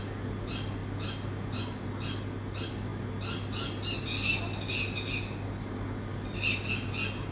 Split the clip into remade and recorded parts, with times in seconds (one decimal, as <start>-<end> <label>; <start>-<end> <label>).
0.0-7.3 recorded